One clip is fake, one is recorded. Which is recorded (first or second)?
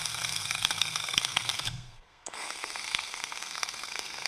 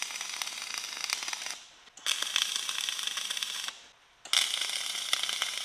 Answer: second